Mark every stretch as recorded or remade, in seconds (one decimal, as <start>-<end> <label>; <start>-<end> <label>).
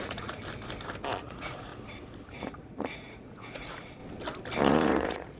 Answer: 0.0-0.4 remade; 0.4-1.2 recorded; 1.2-1.7 remade; 1.7-2.3 recorded; 2.3-4.0 remade; 4.0-4.6 recorded; 4.6-5.4 remade